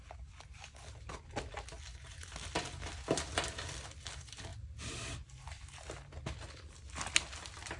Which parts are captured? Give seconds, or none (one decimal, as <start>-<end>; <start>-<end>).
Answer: 0.0-7.8

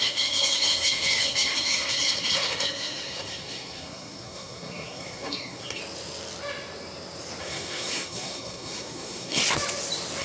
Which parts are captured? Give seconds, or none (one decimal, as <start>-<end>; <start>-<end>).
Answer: 5.8-7.4; 9.4-10.2

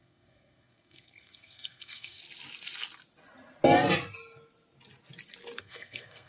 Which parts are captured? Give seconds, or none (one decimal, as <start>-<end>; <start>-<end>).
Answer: 2.2-5.6